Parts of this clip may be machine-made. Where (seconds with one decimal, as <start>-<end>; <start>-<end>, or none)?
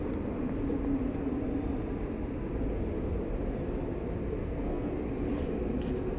4.4-4.9